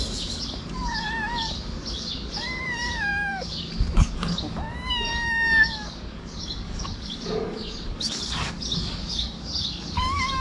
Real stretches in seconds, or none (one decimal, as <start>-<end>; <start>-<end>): none